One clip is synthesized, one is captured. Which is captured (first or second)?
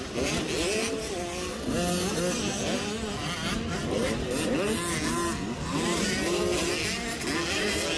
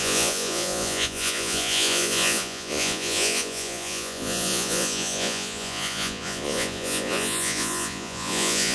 first